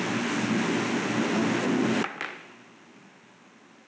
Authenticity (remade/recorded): recorded